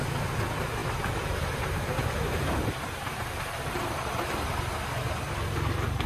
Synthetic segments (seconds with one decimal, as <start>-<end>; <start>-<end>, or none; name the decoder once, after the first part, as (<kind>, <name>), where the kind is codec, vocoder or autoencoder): 0.8-4.5 (vocoder, BigVGAN v2)